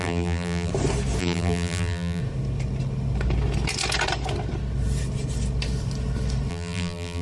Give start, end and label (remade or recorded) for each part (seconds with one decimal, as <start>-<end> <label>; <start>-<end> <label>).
0.0-0.7 remade; 0.7-1.2 recorded; 1.2-2.2 remade; 2.2-6.5 recorded; 6.5-7.2 remade